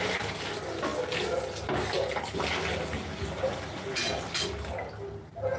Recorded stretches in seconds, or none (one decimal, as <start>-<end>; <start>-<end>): 0.0-5.6